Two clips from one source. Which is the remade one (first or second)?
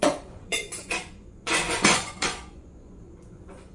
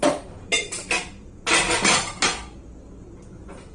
first